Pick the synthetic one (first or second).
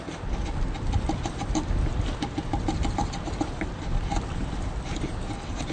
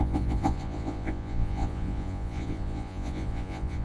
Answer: second